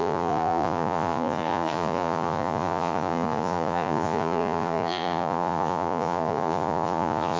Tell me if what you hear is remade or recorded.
remade